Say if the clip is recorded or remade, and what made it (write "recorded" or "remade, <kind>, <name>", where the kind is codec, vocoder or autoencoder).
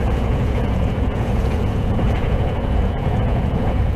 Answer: remade, vocoder, Vocos